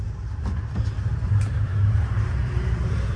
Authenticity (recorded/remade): remade